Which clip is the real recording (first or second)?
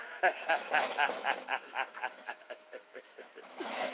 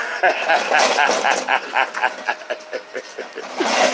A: second